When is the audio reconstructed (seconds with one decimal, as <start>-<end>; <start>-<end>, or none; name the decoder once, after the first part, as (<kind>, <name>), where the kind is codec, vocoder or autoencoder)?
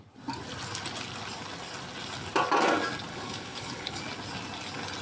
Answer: 3.1-4.0 (codec, HILCodec)